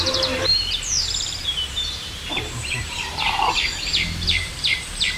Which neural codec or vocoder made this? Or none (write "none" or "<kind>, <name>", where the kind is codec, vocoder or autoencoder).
vocoder, BigVGAN v2